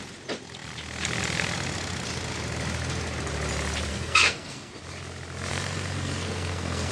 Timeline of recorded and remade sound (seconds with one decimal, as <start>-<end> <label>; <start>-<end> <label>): 0.0-3.9 recorded; 3.9-4.7 remade; 4.7-5.5 recorded; 5.5-6.9 remade